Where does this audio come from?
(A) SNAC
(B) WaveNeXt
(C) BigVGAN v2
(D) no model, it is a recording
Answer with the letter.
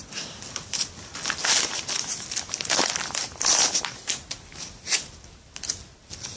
D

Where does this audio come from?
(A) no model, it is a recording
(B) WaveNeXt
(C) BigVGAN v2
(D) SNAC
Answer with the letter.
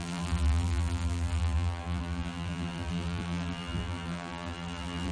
C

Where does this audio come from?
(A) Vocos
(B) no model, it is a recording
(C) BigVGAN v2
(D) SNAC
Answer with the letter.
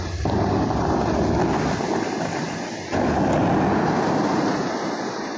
B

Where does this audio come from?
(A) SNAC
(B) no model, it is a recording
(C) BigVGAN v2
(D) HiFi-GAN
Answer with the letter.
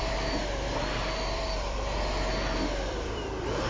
C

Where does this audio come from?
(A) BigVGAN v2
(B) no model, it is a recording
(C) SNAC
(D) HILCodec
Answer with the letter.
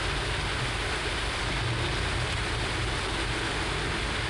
B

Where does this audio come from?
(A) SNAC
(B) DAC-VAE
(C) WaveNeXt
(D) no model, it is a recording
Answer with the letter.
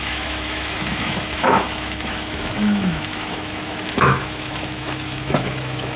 B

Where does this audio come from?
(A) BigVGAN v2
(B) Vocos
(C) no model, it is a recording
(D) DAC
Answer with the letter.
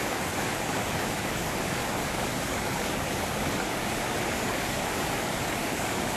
D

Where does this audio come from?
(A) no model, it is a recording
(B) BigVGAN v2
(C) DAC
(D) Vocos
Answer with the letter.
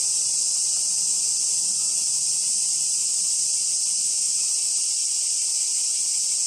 A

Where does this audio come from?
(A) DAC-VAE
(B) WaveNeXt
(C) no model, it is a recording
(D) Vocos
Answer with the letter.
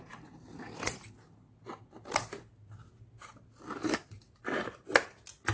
C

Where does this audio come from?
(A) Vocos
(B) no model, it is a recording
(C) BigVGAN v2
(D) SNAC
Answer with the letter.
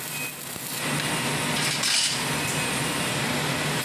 B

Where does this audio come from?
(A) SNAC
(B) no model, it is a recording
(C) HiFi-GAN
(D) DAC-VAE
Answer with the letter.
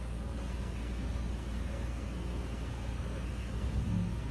A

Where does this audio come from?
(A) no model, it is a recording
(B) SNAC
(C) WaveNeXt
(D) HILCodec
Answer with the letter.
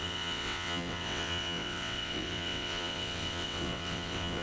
C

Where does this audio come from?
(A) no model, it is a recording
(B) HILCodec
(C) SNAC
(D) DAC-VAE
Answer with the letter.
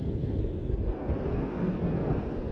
C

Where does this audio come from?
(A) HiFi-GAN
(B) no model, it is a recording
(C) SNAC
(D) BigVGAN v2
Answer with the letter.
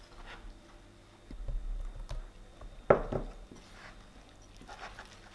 B